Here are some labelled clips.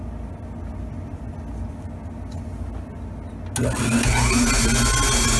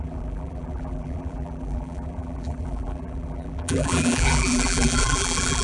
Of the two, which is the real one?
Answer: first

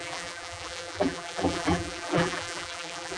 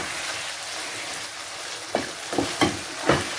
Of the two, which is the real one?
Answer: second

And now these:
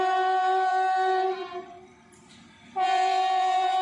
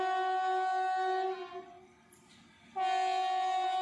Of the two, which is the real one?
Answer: second